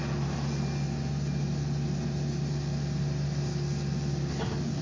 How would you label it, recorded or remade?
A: recorded